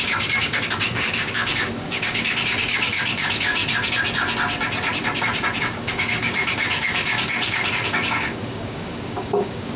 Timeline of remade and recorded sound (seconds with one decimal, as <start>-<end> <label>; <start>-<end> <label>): 0.0-3.6 remade; 3.6-5.6 recorded; 5.6-9.8 remade